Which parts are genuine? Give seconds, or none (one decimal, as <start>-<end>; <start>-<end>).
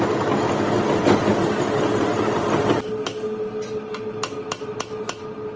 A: 0.0-5.6